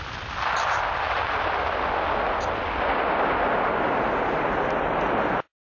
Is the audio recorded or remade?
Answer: recorded